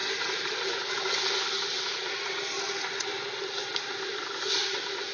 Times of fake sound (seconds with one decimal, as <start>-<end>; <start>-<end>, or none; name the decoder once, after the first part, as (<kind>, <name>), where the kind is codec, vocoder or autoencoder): none